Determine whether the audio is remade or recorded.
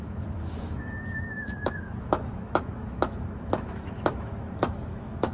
remade